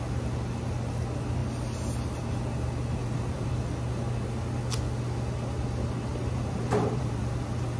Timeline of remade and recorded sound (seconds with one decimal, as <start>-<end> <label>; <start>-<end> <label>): 0.0-3.0 recorded; 3.0-3.5 remade; 3.5-6.1 recorded; 6.1-7.2 remade; 7.2-7.8 recorded